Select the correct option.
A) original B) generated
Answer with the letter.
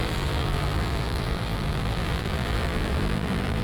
B